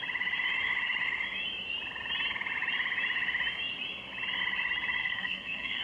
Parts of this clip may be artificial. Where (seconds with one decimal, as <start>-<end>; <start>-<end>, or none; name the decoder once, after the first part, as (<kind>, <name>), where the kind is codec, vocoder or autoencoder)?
5.0-5.8 (codec, SNAC)